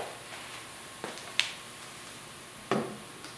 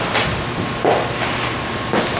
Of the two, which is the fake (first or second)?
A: first